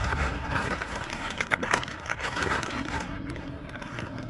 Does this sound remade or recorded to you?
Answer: remade